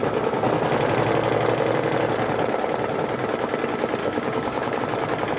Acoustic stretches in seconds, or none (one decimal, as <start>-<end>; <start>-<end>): 0.0-4.0; 4.8-5.4